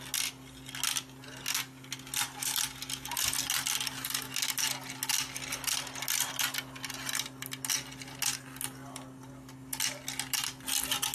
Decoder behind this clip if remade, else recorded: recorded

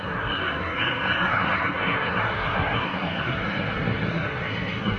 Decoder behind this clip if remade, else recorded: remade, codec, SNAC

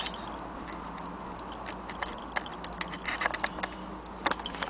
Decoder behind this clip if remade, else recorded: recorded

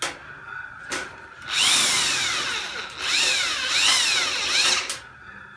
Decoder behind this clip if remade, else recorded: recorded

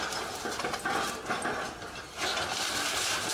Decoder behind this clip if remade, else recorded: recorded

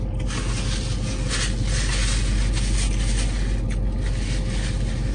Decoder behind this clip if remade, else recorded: recorded